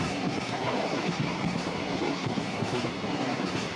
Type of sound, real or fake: fake